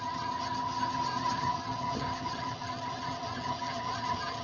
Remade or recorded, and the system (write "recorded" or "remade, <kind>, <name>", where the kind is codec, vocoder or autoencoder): remade, vocoder, HiFi-GAN